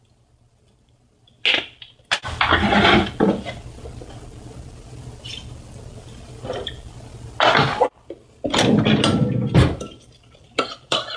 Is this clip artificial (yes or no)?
no